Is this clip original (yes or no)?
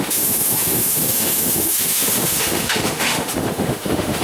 no